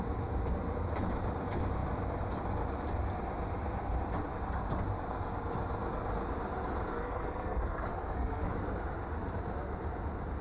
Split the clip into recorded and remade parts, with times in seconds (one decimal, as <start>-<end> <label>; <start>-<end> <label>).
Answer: 0.0-6.9 recorded; 6.9-8.5 remade; 8.5-10.4 recorded